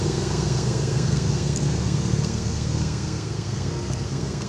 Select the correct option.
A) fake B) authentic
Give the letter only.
A